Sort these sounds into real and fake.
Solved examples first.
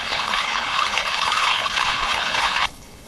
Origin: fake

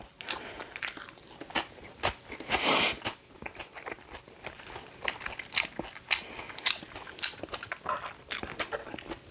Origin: real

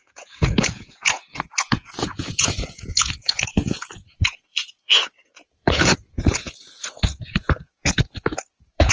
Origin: fake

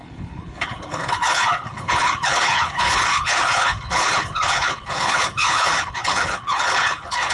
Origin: fake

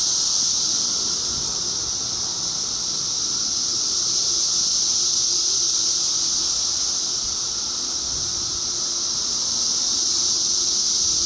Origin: fake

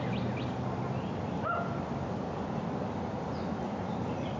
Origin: real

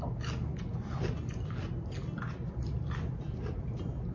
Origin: real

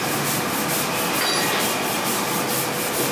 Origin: real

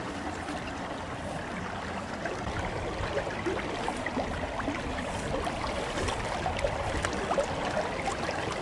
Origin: real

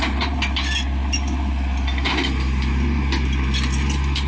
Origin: real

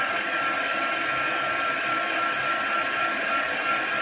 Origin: real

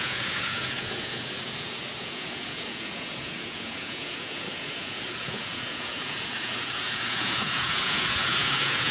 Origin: fake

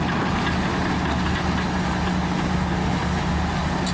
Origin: real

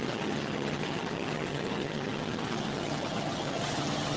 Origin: fake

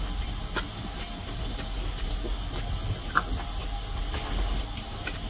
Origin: real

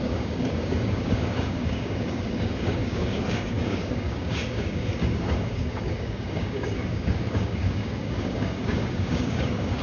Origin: fake